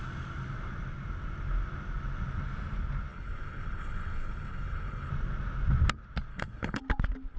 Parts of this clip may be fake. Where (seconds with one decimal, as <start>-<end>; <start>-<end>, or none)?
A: 3.1-5.1; 6.3-6.8